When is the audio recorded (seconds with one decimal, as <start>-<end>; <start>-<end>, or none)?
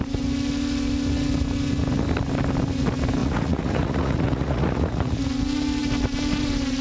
0.0-3.2; 5.2-6.8